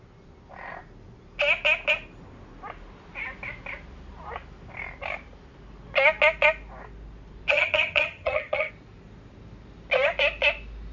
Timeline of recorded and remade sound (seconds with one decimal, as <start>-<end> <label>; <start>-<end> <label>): 0.0-7.5 recorded; 7.5-8.7 remade; 8.7-10.9 recorded